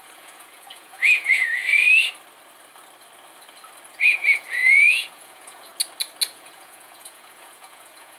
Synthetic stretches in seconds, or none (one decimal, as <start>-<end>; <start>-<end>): 0.0-1.6; 3.9-5.7; 6.3-8.2